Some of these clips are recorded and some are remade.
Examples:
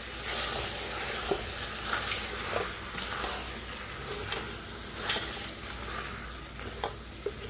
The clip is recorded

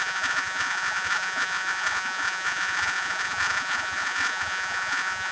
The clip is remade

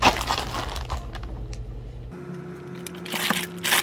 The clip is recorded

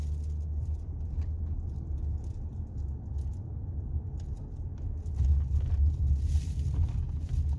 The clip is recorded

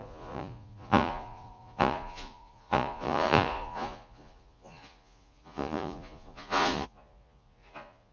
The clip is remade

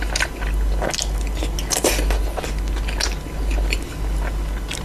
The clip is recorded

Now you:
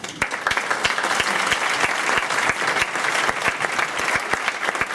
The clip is recorded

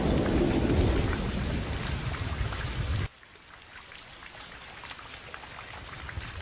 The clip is recorded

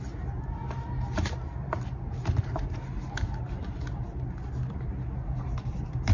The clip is recorded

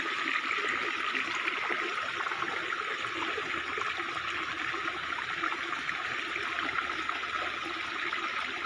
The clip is recorded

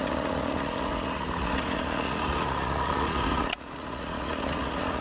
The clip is remade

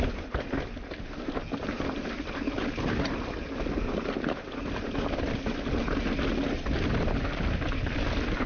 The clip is recorded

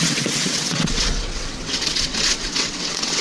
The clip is remade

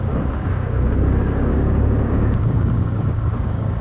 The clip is remade